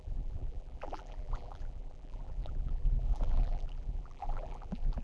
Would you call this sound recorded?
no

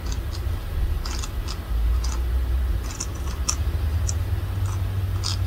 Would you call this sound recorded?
yes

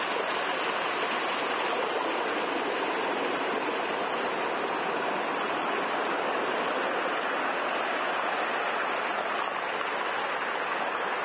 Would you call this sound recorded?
yes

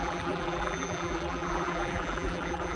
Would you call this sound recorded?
no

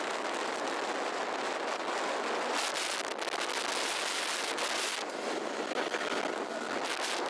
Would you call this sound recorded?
yes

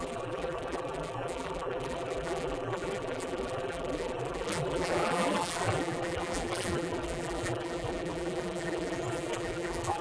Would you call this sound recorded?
no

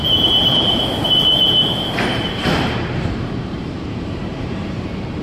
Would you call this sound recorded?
no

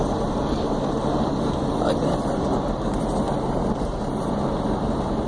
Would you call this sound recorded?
no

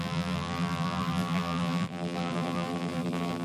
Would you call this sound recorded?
no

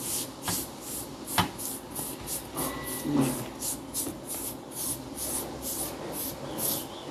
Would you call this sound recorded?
yes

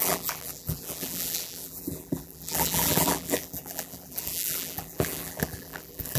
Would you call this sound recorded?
no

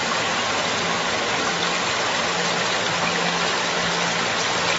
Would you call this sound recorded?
yes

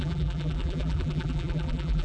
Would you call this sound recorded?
no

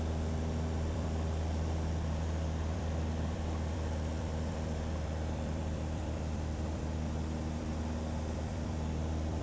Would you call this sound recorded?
no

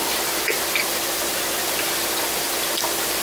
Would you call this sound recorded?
no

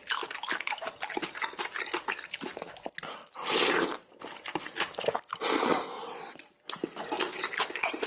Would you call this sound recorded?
yes